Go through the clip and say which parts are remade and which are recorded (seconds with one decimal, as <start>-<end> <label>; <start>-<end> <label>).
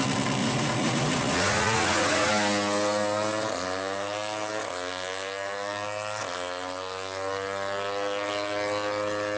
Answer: 0.0-0.4 recorded; 0.4-2.3 remade; 2.3-9.4 recorded